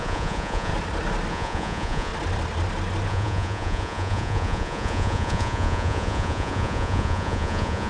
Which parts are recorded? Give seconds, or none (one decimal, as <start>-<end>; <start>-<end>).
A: 0.7-1.3; 2.1-3.1